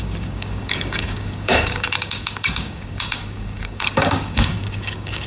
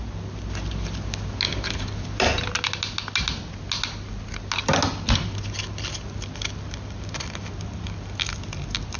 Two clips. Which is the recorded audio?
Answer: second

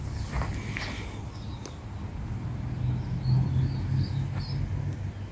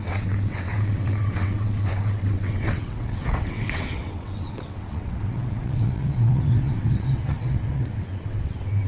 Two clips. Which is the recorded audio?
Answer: first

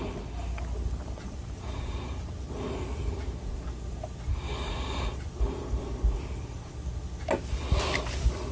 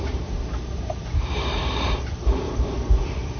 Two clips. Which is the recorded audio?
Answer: first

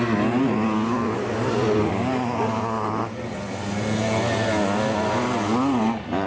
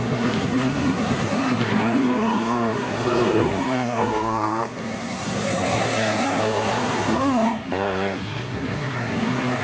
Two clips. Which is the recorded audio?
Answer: first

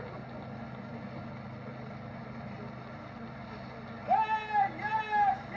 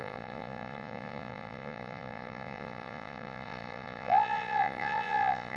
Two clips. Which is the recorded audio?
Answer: first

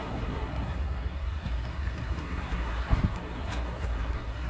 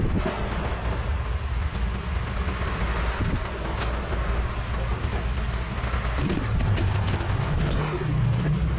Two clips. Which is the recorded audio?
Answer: second